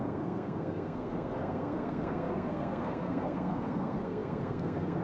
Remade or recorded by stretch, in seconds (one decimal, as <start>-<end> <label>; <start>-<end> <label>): 0.0-5.0 remade